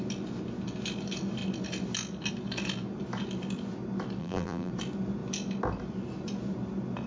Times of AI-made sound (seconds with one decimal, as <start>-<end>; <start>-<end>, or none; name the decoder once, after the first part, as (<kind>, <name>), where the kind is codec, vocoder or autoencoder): 4.2-4.7 (vocoder, BigVGAN v2)